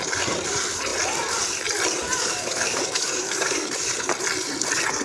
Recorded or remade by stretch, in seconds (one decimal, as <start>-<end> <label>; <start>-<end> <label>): 0.0-2.0 recorded; 2.0-3.7 remade; 3.7-5.0 recorded